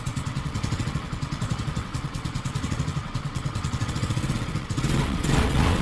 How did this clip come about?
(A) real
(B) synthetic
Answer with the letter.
B